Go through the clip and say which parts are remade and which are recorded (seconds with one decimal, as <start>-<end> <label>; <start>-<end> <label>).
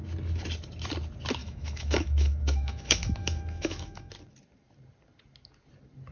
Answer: 0.0-1.4 recorded; 1.4-4.1 remade; 4.1-6.1 recorded